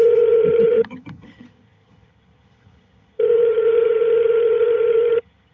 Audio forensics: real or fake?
fake